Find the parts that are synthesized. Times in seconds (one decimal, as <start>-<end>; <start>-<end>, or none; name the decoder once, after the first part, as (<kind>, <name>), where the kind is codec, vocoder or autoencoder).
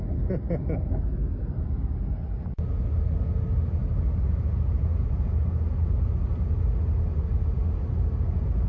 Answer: none